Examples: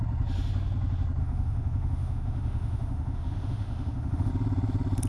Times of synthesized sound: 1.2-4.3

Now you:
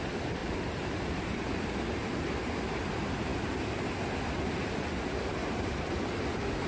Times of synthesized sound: 0.4-1.4

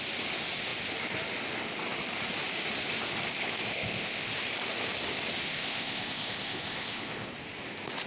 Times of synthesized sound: 3.4-4.3; 5.5-7.3

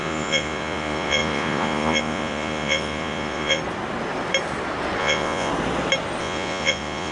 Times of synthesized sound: 0.0-3.6; 5.0-5.5; 6.2-7.1